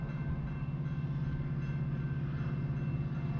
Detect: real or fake real